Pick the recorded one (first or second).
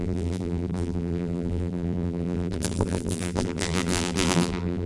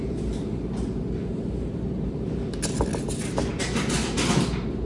second